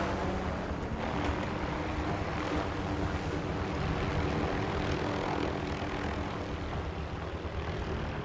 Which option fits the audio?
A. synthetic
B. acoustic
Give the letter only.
B